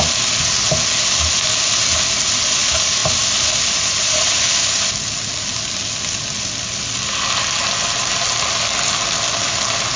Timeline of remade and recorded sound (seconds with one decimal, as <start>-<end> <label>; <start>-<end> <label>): 0.0-10.0 recorded